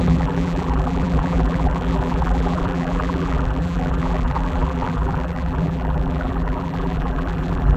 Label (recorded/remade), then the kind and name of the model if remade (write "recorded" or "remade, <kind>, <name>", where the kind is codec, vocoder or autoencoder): remade, vocoder, BigVGAN v2